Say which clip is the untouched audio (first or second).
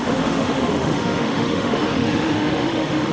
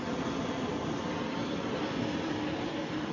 second